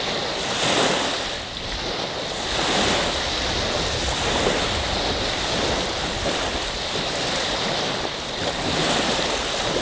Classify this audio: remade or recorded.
recorded